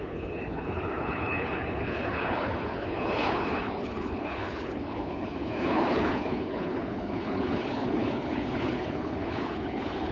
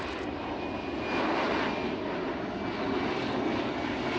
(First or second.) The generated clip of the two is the first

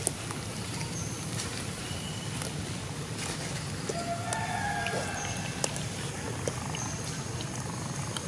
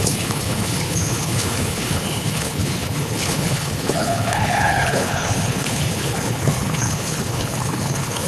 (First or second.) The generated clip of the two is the second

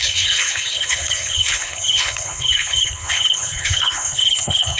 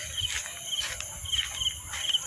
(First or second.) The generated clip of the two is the first